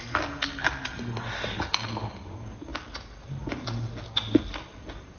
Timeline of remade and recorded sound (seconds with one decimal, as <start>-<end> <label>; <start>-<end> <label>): 0.0-5.2 recorded